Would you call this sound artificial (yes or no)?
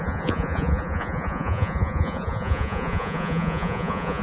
yes